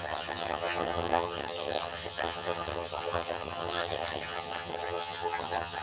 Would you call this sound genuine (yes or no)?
no